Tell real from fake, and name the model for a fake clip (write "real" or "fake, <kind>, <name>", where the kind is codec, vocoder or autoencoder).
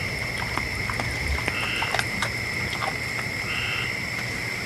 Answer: fake, vocoder, BigVGAN v2